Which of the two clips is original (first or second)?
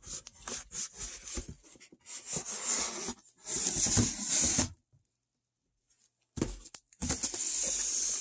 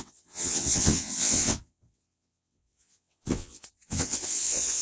first